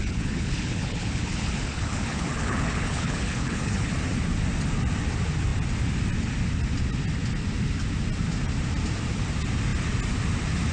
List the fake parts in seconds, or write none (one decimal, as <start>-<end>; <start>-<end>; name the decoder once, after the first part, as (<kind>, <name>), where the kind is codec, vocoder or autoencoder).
0.0-3.9 (codec, HILCodec)